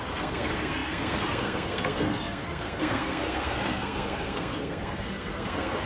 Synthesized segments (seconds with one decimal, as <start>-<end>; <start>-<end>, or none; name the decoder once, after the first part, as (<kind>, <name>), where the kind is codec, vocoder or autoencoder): 0.0-5.9 (codec, SNAC)